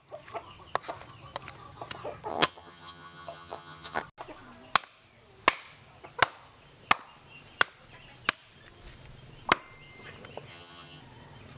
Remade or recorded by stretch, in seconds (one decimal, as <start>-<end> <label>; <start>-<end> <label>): 0.0-2.3 recorded; 2.3-4.0 remade; 4.0-10.5 recorded; 10.5-11.0 remade; 11.0-11.6 recorded